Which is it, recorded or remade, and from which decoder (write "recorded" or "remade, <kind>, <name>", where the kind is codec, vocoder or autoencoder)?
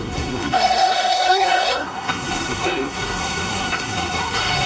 remade, codec, SNAC